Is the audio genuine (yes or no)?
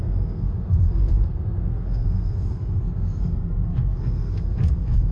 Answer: no